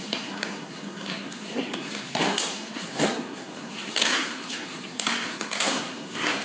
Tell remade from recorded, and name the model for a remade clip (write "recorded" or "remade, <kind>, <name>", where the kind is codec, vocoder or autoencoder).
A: remade, codec, SNAC